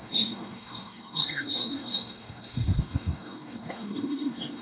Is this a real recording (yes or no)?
no